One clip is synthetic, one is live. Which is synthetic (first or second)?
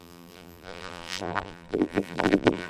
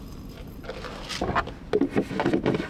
first